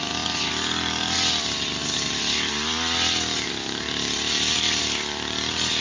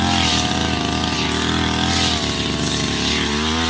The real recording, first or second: second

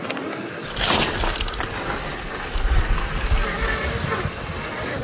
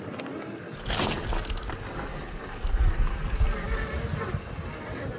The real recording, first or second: second